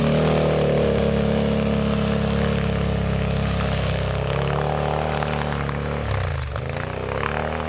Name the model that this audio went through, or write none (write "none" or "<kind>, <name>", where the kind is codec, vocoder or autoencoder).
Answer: none